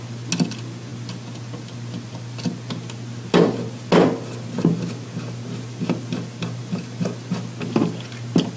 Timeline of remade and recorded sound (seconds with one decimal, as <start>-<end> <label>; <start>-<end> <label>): 0.0-6.6 recorded; 6.6-7.3 remade; 7.3-8.6 recorded